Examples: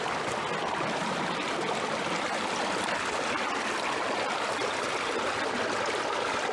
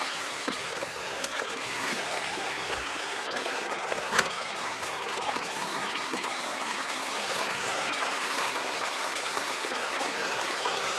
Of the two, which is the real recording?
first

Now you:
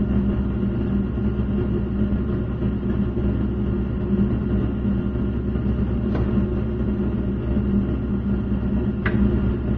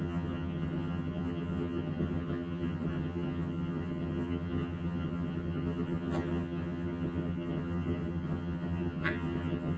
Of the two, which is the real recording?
first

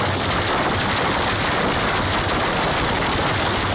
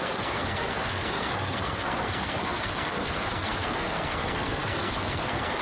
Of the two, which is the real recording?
first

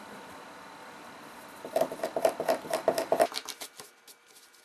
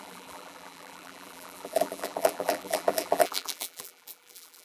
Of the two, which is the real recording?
first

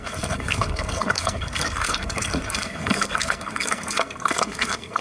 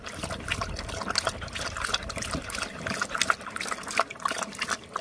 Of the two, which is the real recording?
second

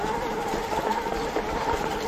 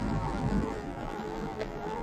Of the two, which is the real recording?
first